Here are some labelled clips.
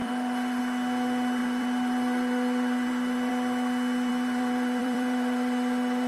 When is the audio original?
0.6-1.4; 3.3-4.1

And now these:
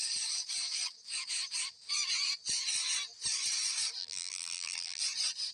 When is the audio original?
0.0-4.0; 5.0-5.5

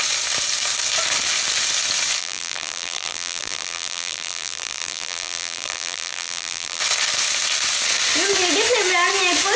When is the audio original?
0.0-2.2; 6.8-9.6